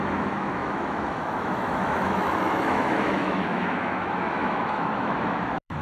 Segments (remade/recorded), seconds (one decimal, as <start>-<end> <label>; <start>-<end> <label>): 0.0-5.8 remade